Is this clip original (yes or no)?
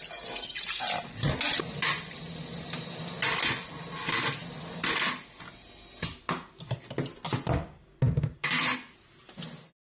yes